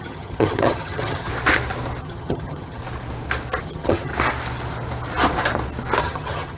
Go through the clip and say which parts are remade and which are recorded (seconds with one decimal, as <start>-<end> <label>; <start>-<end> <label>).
0.0-1.3 remade; 1.3-2.0 recorded; 2.0-2.8 remade; 2.8-3.6 recorded; 3.6-4.1 remade; 4.1-6.0 recorded; 6.0-6.6 remade